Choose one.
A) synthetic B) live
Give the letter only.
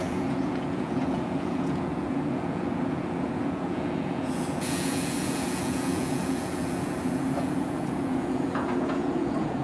A